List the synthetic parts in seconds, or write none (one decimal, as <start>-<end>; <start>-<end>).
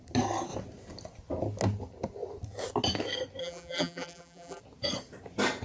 3.4-4.6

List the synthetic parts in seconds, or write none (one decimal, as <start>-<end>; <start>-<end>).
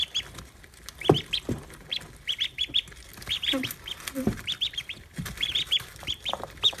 3.6-6.8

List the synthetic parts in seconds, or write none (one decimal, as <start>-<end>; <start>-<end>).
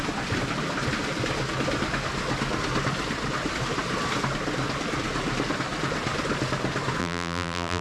7.0-7.8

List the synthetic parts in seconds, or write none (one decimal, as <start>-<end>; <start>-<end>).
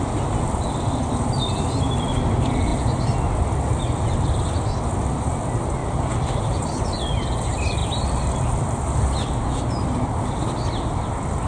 5.8-7.1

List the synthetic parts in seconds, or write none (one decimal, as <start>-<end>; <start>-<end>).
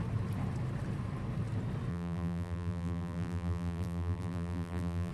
1.9-5.1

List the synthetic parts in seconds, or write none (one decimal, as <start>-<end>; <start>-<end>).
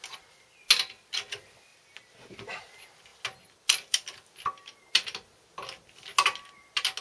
1.7-2.7